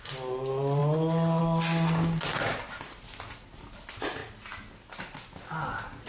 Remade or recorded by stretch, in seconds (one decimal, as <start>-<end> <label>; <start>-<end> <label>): 0.0-6.1 recorded